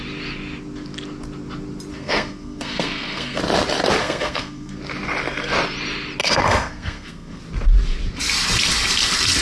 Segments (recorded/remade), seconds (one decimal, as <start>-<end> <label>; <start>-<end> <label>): 0.0-1.9 recorded; 1.9-3.4 remade; 3.4-4.0 recorded; 4.0-4.8 remade; 4.8-6.2 recorded; 6.2-7.4 remade; 7.4-9.4 recorded